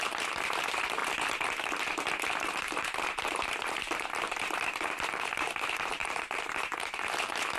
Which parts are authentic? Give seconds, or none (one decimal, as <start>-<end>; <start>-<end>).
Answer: 1.0-2.4